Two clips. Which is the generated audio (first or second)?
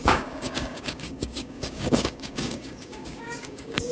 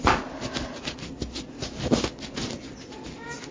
first